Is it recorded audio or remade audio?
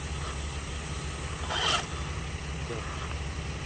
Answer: recorded